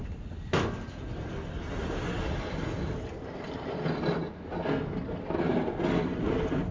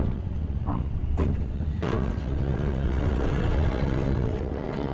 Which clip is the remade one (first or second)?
second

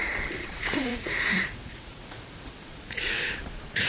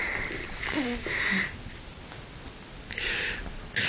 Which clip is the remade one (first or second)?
first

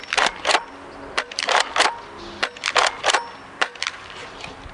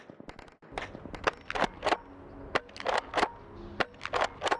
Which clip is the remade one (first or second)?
first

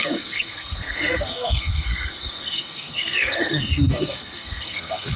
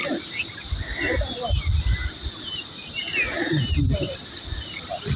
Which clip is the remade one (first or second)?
first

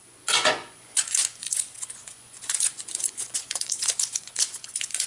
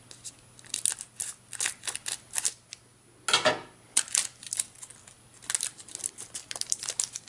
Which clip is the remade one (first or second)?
first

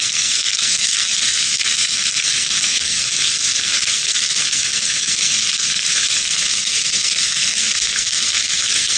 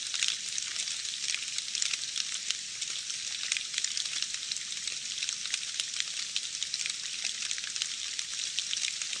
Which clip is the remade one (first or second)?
first